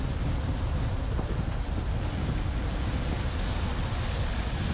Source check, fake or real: real